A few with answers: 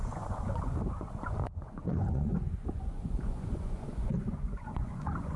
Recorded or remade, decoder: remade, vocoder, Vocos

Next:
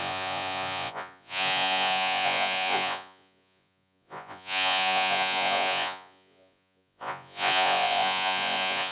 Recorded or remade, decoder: remade, vocoder, Vocos